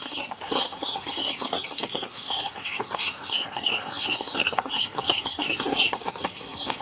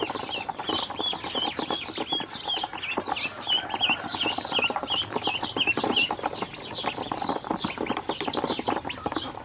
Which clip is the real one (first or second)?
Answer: second